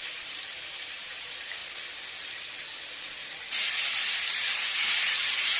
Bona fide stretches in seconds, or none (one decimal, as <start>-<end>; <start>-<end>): 1.6-4.1